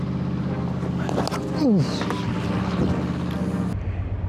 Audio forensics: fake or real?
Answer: real